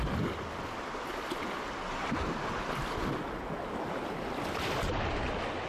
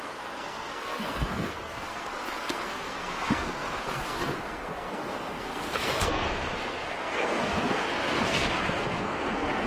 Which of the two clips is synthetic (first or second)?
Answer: second